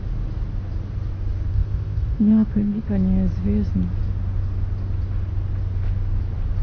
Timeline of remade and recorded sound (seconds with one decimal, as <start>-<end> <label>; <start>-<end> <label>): 0.0-1.5 recorded; 1.5-2.9 remade; 2.9-6.6 recorded